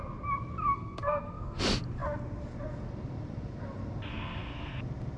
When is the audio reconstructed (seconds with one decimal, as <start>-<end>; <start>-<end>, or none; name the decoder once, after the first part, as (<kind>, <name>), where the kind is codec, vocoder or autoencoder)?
0.6-1.6 (codec, SNAC); 4.1-4.8